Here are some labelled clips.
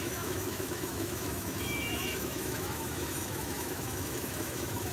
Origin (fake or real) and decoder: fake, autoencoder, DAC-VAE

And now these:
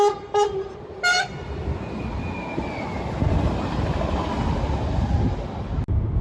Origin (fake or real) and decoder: real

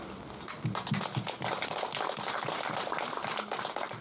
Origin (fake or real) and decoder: real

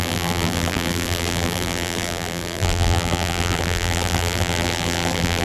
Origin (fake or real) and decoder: fake, vocoder, BigVGAN v2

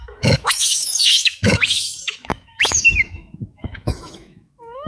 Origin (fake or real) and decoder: fake, autoencoder, DAC-VAE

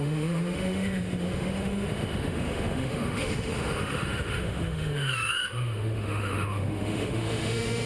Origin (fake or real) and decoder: fake, autoencoder, DAC-VAE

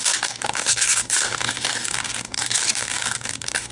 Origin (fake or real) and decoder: fake, codec, DAC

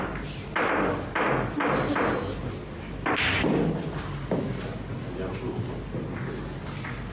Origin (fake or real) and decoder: real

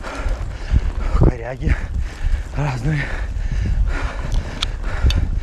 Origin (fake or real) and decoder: real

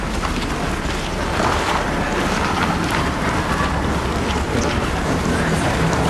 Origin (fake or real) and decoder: fake, vocoder, BigVGAN v2